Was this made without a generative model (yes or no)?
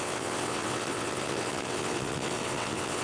no